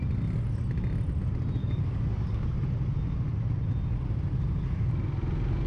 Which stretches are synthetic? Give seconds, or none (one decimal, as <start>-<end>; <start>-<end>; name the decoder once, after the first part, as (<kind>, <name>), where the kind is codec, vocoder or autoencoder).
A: 1.6-2.5 (codec, DAC)

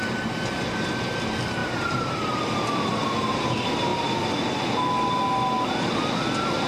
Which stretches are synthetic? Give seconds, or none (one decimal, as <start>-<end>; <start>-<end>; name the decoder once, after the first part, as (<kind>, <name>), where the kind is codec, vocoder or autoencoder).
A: 1.6-2.2 (vocoder, BigVGAN v2); 2.9-3.4

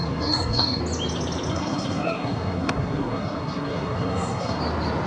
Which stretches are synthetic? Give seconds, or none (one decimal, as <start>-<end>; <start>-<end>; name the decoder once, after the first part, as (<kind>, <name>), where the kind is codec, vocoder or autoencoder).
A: 0.0-0.8 (codec, SNAC); 1.5-4.6

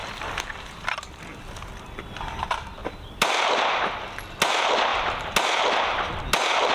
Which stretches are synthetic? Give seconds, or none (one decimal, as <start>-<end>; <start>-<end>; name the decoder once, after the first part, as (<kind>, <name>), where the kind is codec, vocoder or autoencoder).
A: 0.0-1.4 (vocoder, BigVGAN v2); 2.8-3.8

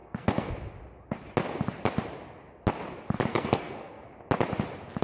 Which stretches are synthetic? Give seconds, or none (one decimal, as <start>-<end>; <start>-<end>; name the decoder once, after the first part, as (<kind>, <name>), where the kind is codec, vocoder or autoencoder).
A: 0.0-0.5 (codec, SNAC); 3.3-4.1